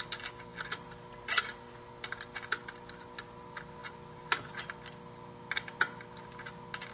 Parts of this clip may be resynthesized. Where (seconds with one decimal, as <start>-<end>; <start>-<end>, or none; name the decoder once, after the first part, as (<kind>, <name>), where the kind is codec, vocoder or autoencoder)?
none